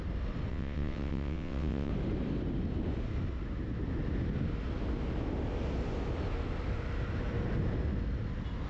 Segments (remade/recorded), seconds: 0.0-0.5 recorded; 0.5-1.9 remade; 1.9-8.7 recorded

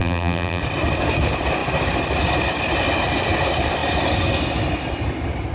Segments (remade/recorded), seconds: 0.0-0.6 remade; 0.6-5.5 recorded

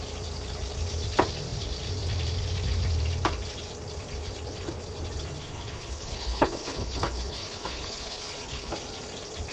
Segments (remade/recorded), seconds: 0.0-5.4 recorded; 5.4-8.7 remade; 8.7-9.5 recorded